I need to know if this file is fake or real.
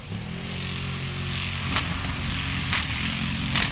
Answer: real